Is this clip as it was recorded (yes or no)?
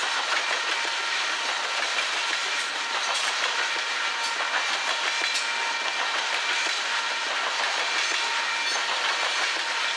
yes